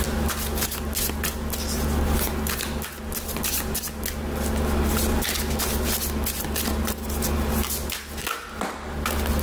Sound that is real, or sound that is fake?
real